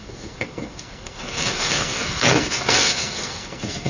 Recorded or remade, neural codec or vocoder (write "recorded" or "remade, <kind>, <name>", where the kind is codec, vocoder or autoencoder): remade, codec, SNAC